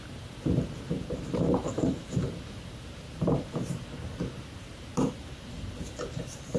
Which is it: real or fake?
fake